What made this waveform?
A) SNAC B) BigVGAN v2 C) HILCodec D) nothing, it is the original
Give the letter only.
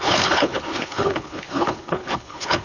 C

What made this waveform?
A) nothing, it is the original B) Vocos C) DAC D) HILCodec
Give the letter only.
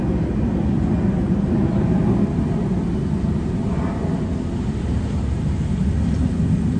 A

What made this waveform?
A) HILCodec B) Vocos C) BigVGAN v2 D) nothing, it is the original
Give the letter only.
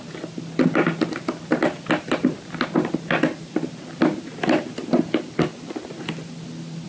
D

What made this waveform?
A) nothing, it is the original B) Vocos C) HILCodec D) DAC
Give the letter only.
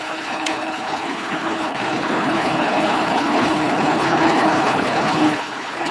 C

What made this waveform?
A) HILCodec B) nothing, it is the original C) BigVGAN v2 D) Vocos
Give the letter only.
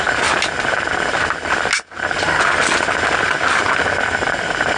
B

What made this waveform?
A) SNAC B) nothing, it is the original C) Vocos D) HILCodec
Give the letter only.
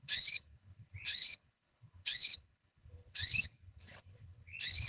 D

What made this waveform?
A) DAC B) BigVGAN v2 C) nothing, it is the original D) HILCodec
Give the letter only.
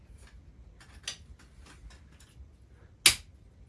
C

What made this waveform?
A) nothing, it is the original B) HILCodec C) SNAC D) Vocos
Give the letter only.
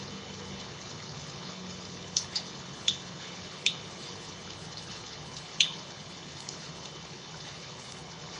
B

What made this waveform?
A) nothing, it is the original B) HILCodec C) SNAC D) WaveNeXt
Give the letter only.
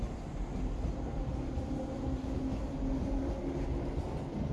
A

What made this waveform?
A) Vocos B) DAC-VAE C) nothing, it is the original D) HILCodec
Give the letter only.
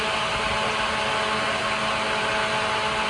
C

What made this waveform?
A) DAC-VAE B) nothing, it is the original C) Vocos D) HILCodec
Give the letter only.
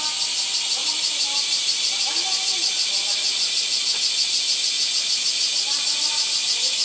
B